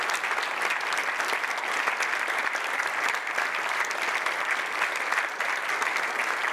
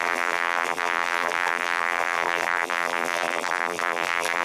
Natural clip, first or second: first